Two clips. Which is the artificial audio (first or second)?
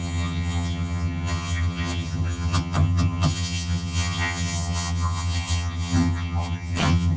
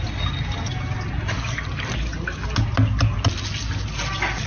first